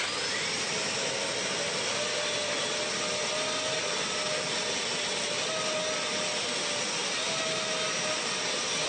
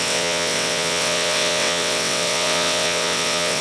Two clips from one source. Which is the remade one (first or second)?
second